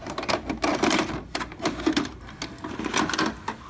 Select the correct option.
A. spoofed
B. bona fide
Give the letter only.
B